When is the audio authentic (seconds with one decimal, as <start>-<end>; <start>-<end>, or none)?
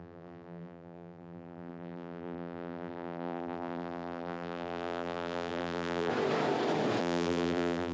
6.1-7.0